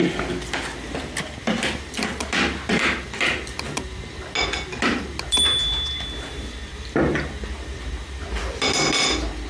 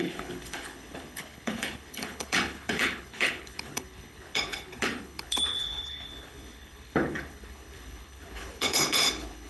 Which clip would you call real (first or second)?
first